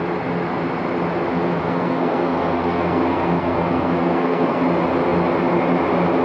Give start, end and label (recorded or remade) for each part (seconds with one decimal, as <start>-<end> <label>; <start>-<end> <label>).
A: 0.0-1.6 recorded; 1.6-4.6 remade; 4.6-6.2 recorded